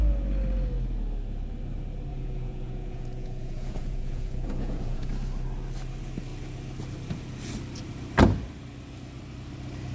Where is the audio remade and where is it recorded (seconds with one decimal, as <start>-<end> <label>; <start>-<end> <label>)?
0.0-2.1 recorded; 2.1-5.1 remade; 5.1-9.9 recorded